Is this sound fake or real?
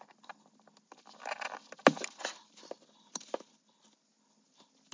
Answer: real